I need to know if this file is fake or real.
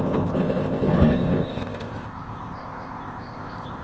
fake